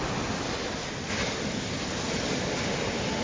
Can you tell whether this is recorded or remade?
recorded